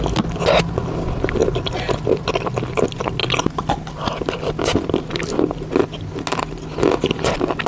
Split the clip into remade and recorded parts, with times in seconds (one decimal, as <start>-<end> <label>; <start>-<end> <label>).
0.0-7.7 recorded